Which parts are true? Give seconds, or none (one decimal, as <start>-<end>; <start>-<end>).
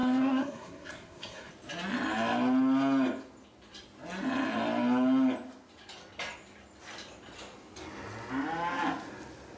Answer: 1.5-9.6